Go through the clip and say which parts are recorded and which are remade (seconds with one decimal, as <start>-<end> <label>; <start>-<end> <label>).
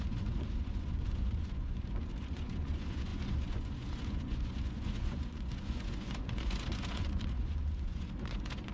0.0-8.7 remade